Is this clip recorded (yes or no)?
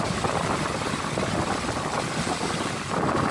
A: yes